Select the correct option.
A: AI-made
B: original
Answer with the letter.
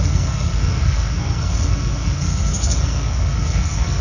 A